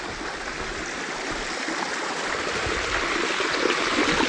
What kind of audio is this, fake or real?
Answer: real